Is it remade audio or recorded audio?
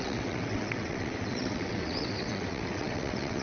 remade